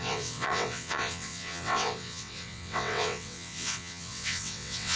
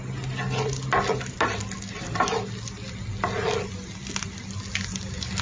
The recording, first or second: second